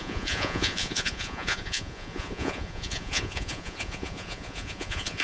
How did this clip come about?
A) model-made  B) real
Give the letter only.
A